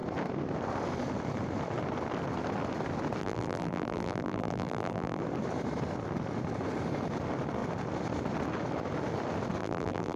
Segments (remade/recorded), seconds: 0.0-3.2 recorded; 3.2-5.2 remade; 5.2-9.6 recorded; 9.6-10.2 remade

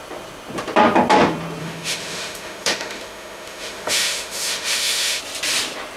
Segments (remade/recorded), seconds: 0.0-1.6 recorded; 1.6-5.2 remade; 5.2-6.0 recorded

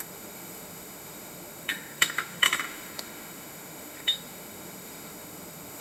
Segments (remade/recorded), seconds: 0.0-5.8 remade

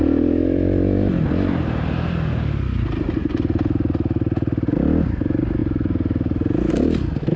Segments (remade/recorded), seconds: 0.0-7.4 recorded

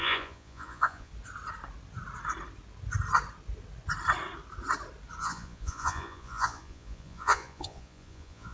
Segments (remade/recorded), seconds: 0.0-1.1 remade; 1.1-5.2 recorded; 5.2-8.5 remade

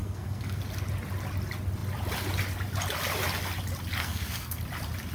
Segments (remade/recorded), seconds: 0.0-0.6 remade; 0.6-4.0 recorded; 4.0-4.6 remade; 4.6-5.1 recorded

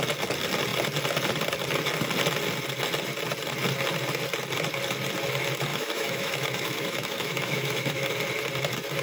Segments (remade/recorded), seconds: 0.0-5.7 recorded; 5.7-8.1 remade; 8.1-9.0 recorded

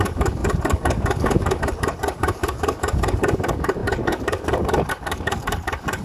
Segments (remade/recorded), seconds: 0.0-6.0 remade